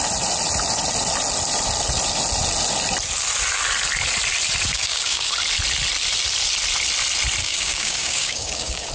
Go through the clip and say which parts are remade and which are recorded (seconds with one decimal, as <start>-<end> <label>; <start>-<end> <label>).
0.0-4.7 recorded; 4.7-5.3 remade; 5.3-7.4 recorded; 7.4-8.9 remade